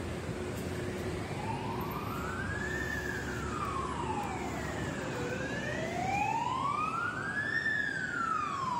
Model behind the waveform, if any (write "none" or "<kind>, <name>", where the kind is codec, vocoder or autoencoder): none